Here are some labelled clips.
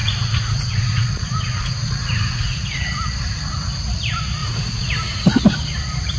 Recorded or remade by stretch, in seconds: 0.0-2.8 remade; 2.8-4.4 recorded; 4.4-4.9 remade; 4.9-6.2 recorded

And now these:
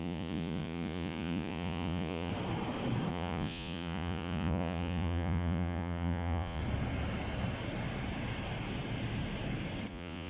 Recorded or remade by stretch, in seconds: 0.0-2.3 remade; 2.3-3.1 recorded; 3.1-6.6 remade; 6.6-9.9 recorded; 9.9-10.3 remade